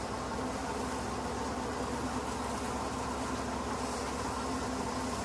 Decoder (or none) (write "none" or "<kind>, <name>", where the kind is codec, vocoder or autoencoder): none